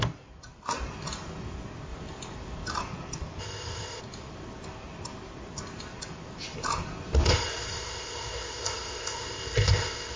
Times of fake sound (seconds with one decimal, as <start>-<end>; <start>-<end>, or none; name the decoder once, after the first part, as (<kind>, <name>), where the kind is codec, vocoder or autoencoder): 3.4-4.0 (codec, ZipCodec); 7.3-10.2